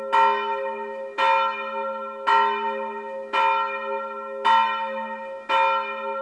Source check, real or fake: real